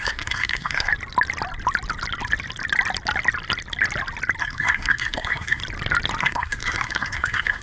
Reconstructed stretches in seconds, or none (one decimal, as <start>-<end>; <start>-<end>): 0.0-0.9; 4.4-5.6; 6.2-7.6